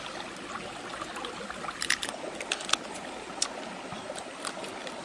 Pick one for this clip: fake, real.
real